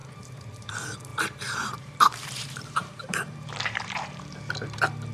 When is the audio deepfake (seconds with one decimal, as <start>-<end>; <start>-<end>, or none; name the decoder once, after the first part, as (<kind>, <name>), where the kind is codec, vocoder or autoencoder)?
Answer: 0.0-0.7 (vocoder, BigVGAN v2); 1.1-4.2